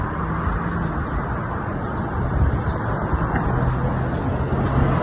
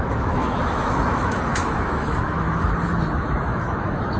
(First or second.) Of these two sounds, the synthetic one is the second